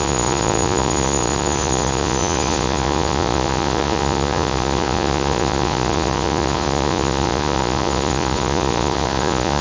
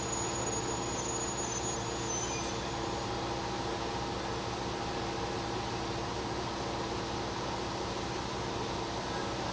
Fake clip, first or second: first